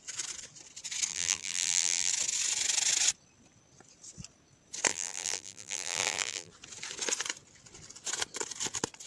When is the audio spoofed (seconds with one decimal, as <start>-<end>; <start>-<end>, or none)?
1.1-2.1; 4.9-6.5